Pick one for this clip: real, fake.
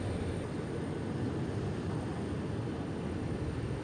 real